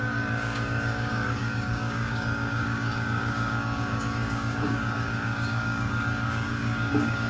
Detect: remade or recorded remade